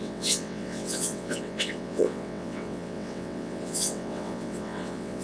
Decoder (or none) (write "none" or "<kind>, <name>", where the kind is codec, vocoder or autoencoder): vocoder, WaveNeXt